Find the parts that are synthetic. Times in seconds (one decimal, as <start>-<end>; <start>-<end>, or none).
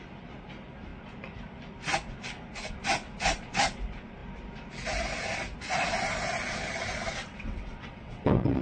7.2-8.6